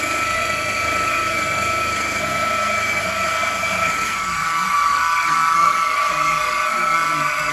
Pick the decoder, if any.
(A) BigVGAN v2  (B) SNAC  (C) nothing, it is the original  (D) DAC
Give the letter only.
B